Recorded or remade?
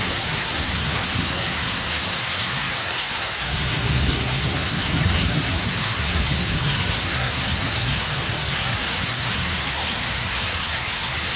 remade